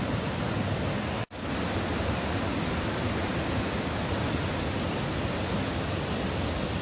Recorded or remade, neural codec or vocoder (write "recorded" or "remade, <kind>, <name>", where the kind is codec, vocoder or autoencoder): remade, vocoder, BigVGAN v2